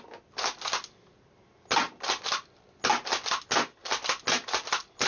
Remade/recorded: recorded